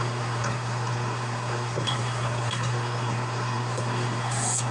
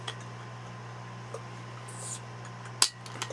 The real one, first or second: second